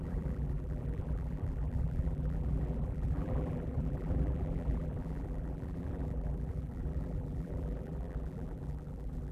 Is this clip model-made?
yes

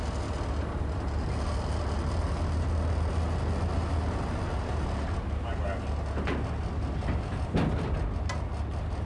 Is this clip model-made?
no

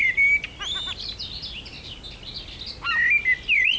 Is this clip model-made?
no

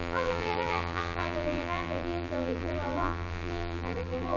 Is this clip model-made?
yes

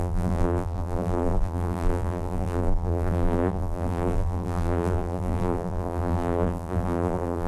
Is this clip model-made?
yes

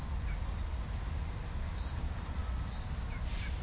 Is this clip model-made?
no